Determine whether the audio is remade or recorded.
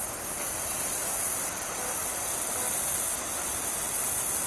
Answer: recorded